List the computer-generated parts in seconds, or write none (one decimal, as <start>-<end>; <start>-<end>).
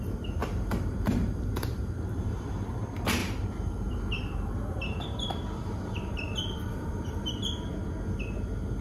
0.4-2.8; 3.2-7.3